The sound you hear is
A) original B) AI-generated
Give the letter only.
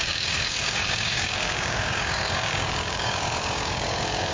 B